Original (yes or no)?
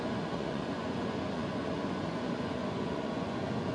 no